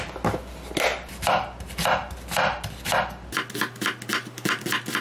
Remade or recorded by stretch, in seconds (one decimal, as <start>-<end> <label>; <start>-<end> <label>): 0.0-5.0 recorded